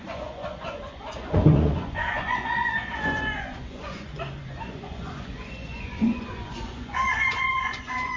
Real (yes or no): no